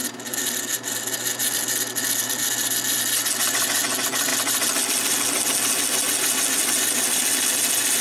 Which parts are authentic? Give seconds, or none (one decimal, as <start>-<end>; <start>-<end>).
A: 0.0-8.0